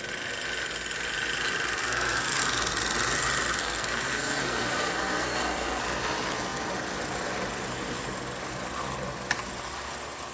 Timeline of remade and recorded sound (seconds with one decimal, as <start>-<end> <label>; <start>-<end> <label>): 0.0-1.8 recorded; 1.8-2.4 remade; 2.4-3.6 recorded; 3.6-5.8 remade; 5.8-10.3 recorded